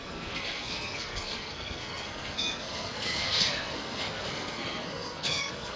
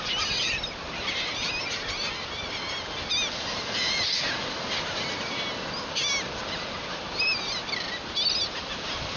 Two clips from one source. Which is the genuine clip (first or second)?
second